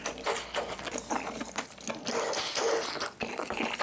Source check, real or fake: real